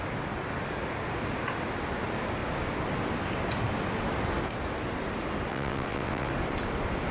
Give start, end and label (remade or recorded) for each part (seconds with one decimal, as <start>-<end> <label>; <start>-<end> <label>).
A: 0.0-5.5 recorded; 5.5-6.3 remade; 6.3-7.1 recorded